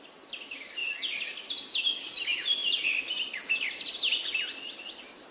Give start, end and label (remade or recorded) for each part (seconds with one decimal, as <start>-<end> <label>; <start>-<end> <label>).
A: 0.0-5.3 recorded